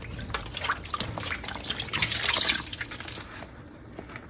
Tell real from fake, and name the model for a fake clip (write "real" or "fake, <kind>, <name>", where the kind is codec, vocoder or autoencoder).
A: real